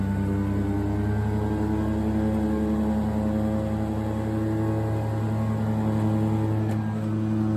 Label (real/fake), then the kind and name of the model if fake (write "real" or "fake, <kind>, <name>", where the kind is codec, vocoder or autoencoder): real